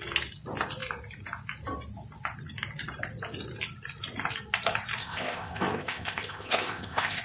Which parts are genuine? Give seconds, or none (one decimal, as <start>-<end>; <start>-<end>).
0.0-5.0